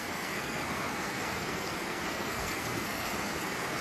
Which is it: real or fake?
fake